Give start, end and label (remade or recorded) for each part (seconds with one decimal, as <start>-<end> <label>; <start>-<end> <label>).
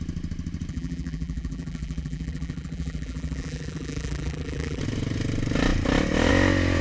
0.0-0.7 recorded; 0.7-4.8 remade; 4.8-6.8 recorded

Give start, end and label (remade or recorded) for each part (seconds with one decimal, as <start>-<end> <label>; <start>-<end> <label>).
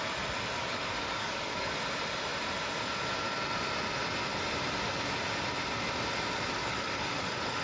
0.0-0.6 recorded; 0.6-1.7 remade; 1.7-6.6 recorded; 6.6-7.6 remade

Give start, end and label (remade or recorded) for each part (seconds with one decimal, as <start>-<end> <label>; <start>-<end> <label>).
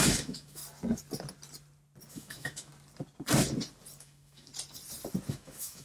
0.0-0.6 remade; 0.6-2.1 recorded; 2.1-2.7 remade; 2.7-4.0 recorded; 4.0-4.5 remade; 4.5-5.3 recorded; 5.3-5.8 remade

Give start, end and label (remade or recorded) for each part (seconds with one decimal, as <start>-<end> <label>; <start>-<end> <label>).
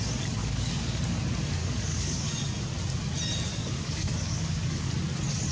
0.0-0.4 recorded; 0.4-1.0 remade; 1.0-1.6 recorded; 1.6-2.3 remade; 2.3-3.5 recorded; 3.5-4.9 remade; 4.9-5.5 recorded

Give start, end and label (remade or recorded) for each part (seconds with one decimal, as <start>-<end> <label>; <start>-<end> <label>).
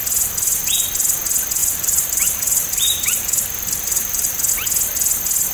0.0-1.6 recorded; 1.6-4.5 remade; 4.5-5.5 recorded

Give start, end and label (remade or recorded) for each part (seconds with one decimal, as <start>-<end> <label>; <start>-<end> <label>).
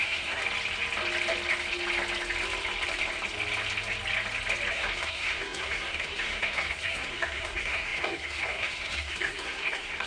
0.0-0.4 remade; 0.4-4.7 recorded; 4.7-10.1 remade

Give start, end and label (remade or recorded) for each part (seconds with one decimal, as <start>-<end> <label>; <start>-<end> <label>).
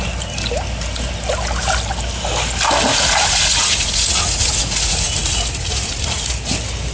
0.0-2.9 recorded; 2.9-6.3 remade; 6.3-6.9 recorded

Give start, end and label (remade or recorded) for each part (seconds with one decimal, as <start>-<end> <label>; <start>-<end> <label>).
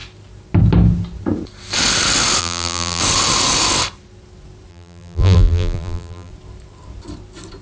0.0-2.4 recorded; 2.4-3.0 remade; 3.0-4.7 recorded; 4.7-6.3 remade; 6.3-7.6 recorded